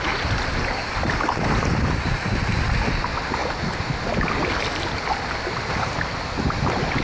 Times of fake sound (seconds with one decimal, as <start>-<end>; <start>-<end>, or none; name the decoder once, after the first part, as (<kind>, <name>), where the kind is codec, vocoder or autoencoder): none